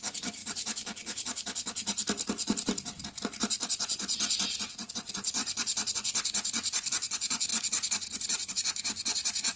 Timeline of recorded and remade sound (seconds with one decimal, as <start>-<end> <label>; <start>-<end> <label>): 0.0-0.4 remade; 0.4-4.9 recorded; 4.9-9.6 remade